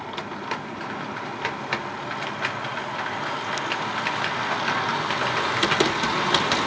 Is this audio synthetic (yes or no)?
no